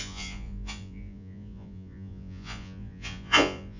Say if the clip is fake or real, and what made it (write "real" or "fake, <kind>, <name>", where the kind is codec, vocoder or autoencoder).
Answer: fake, vocoder, Vocos